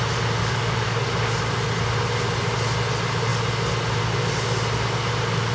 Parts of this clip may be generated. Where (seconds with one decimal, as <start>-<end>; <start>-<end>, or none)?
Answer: 0.4-1.1